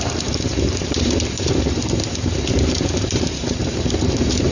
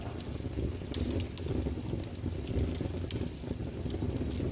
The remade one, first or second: first